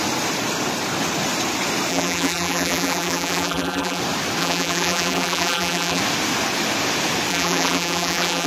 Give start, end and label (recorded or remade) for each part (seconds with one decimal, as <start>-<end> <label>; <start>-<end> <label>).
0.0-1.9 recorded; 1.9-4.0 remade; 4.0-4.4 recorded; 4.4-6.0 remade; 6.0-7.3 recorded; 7.3-8.5 remade